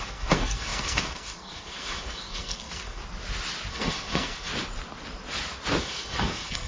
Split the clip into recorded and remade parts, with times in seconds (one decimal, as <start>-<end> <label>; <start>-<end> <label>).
0.0-3.0 remade; 3.0-3.7 recorded; 3.7-4.5 remade; 4.5-5.8 recorded; 5.8-6.7 remade